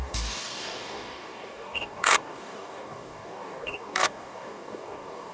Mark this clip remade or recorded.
remade